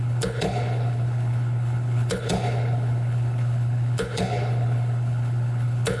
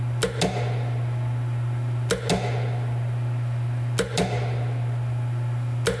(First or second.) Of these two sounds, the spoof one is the first